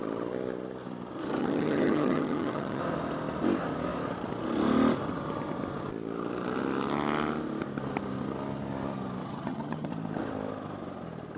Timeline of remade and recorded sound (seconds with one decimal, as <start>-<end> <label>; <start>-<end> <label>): 0.0-1.4 recorded; 1.4-2.8 remade; 2.8-9.2 recorded; 9.2-9.9 remade; 9.9-11.4 recorded